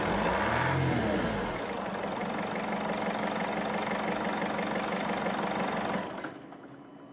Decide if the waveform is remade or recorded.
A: recorded